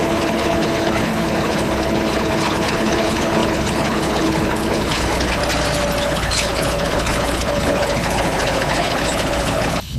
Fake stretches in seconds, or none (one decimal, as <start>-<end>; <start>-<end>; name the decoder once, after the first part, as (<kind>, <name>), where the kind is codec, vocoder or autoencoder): 0.0-5.4 (codec, HILCodec); 6.0-10.0